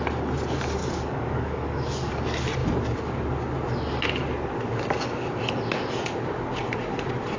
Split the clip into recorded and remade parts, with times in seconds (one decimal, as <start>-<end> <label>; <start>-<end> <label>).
0.0-0.8 recorded; 0.8-2.1 remade; 2.1-7.4 recorded

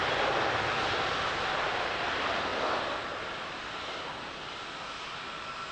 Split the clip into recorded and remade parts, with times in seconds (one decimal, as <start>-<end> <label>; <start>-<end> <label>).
0.0-5.7 recorded

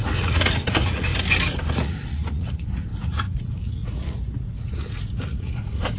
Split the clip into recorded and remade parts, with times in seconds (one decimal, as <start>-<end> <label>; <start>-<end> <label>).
0.0-1.1 remade; 1.1-1.7 recorded; 1.7-6.0 remade

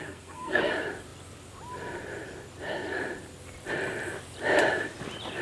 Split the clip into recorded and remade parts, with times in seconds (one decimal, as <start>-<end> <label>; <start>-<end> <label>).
0.0-0.7 remade; 0.7-5.4 recorded